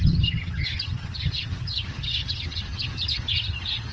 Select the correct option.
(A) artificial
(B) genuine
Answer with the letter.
A